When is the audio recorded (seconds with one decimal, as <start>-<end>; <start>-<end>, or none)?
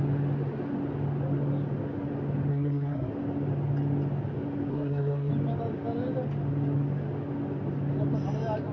0.0-2.5; 3.1-4.7; 5.3-8.7